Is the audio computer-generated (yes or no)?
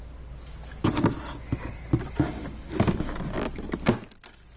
no